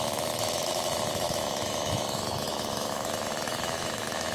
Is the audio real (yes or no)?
no